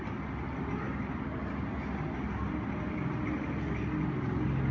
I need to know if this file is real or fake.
real